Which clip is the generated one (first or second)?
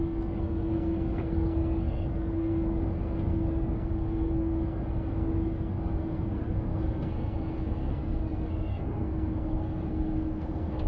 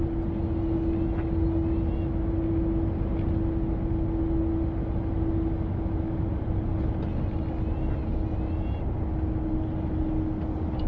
first